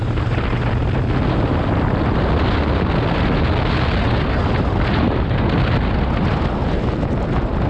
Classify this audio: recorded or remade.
recorded